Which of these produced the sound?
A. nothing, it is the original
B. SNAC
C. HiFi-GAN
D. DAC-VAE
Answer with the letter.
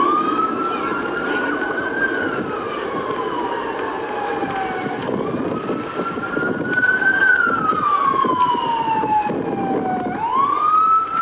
A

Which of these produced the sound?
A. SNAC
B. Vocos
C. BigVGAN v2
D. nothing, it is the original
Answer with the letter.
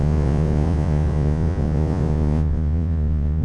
B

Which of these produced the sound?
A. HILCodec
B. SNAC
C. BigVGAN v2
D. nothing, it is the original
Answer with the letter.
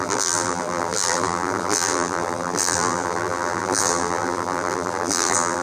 C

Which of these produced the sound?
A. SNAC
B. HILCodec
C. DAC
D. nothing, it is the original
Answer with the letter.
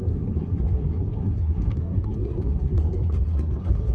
A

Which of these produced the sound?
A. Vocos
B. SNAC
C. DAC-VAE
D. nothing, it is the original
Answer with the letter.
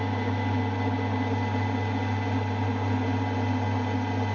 D